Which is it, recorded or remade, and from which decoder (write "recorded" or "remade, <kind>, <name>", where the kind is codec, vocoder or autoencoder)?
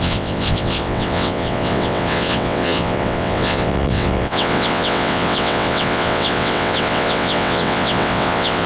remade, vocoder, WaveNeXt